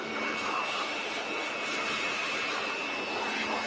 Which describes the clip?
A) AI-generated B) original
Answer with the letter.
B